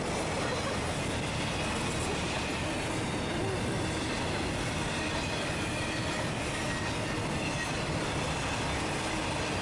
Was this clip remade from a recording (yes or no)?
no